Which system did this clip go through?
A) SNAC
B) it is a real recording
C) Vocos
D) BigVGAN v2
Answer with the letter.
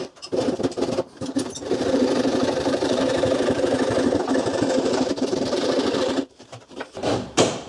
D